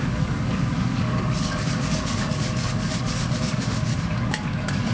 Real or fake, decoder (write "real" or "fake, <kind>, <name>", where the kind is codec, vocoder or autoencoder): fake, codec, DAC